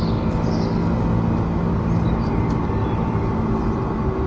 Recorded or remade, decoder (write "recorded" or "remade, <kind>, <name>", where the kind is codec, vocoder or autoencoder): recorded